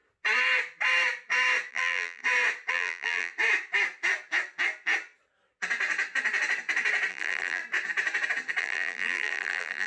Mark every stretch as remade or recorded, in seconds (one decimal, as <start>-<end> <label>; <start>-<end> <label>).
0.0-1.7 recorded; 1.7-2.2 remade; 2.2-2.7 recorded; 2.7-3.3 remade; 3.3-7.1 recorded; 7.1-7.6 remade; 7.6-8.6 recorded; 8.6-9.9 remade